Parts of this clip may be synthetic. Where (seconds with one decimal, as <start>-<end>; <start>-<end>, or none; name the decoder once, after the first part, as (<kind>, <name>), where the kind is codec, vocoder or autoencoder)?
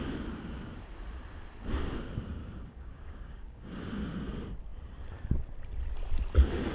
2.4-3.7 (codec, DAC)